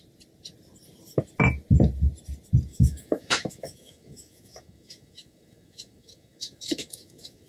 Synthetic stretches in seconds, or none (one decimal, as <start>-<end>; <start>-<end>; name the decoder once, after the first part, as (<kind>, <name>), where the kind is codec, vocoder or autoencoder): 2.7-7.5 (autoencoder, DAC-VAE)